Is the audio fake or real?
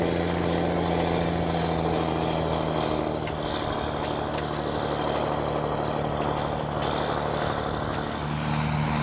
real